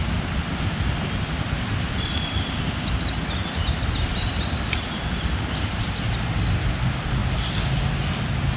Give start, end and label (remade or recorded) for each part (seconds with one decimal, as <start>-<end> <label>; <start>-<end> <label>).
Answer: 0.0-3.4 recorded; 3.4-4.3 remade; 4.3-8.6 recorded